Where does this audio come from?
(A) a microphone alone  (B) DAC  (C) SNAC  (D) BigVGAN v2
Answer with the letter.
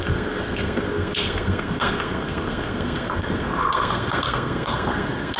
C